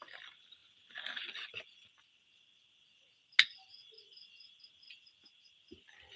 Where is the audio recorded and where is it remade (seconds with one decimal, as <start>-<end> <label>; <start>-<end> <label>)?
0.0-6.2 recorded